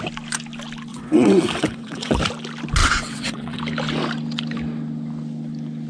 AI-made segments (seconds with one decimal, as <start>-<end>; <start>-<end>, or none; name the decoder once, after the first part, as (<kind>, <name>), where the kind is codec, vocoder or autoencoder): 0.9-2.2 (vocoder, WaveNeXt); 2.8-3.6